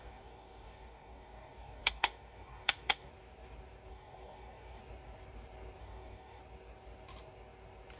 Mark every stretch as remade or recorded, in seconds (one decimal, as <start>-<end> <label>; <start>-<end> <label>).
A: 0.0-3.1 remade; 3.1-3.9 recorded; 3.9-4.8 remade; 4.8-5.8 recorded; 5.8-6.4 remade; 6.4-8.0 recorded